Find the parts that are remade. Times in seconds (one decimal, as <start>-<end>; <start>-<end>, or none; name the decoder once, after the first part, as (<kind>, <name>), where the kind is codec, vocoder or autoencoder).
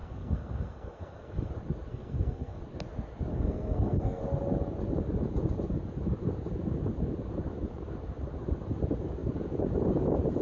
0.0-1.5 (codec, SNAC); 1.9-2.6; 3.3-4.2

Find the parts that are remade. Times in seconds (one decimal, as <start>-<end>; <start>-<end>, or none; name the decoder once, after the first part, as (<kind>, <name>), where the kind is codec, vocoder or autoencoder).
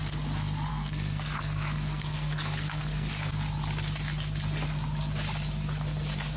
0.7-3.3 (codec, SNAC)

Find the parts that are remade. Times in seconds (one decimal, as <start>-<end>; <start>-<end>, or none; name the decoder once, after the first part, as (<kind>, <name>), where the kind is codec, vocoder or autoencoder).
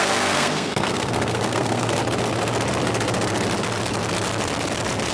0.0-2.0 (codec, SNAC)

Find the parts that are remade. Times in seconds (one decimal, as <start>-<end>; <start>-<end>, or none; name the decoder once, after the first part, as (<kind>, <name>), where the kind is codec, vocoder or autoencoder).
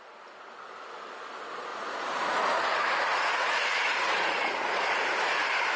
1.7-5.1 (vocoder, Vocos)